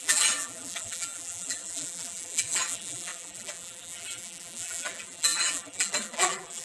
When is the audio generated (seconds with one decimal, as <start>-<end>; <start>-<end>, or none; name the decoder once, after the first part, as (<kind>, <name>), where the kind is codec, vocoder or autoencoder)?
0.0-6.6 (vocoder, BigVGAN v2)